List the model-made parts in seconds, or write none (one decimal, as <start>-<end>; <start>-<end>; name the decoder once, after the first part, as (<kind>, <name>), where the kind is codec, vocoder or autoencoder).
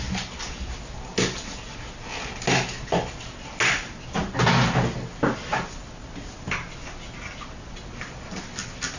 none